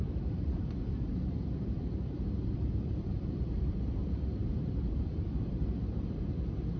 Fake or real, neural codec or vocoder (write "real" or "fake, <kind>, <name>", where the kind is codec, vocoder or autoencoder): fake, vocoder, BigVGAN v2